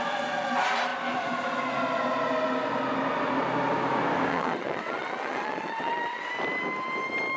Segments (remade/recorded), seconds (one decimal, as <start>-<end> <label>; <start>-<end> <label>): 0.0-4.3 recorded; 4.3-6.3 remade; 6.3-7.4 recorded